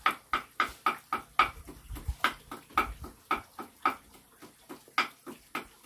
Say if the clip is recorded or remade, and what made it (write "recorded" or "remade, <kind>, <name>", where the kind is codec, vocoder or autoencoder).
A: recorded